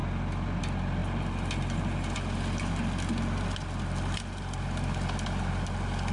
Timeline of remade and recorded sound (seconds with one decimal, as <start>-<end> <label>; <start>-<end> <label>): 0.0-6.1 recorded